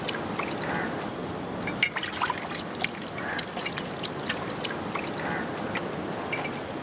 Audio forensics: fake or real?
real